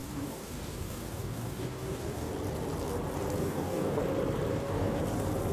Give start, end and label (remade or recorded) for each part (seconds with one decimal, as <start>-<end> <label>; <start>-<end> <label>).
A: 0.0-2.3 remade; 2.3-3.4 recorded; 3.4-4.0 remade; 4.0-4.5 recorded; 4.5-5.0 remade; 5.0-5.5 recorded